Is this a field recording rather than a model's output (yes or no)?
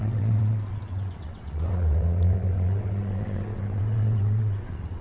no